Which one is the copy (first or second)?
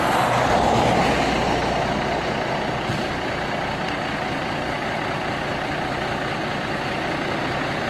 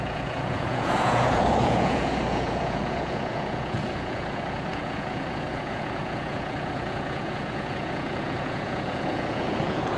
second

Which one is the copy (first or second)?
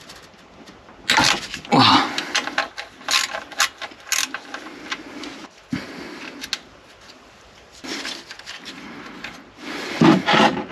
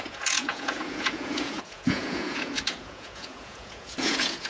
second